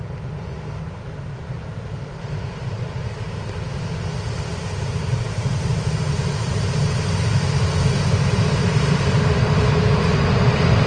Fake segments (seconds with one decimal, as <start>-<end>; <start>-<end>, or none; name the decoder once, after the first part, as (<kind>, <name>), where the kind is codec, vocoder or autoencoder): 1.3-3.6 (vocoder, BigVGAN v2); 4.5-8.8